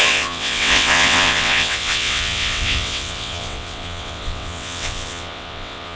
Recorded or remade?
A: remade